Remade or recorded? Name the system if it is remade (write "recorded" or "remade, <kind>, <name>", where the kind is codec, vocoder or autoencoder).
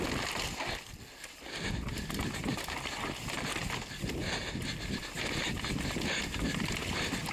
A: recorded